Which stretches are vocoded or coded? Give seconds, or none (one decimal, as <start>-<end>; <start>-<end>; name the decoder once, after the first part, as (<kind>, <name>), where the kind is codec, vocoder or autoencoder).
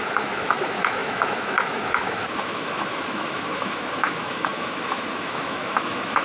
0.0-6.2 (autoencoder, DAC-VAE)